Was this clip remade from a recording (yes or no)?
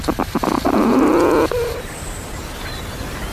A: no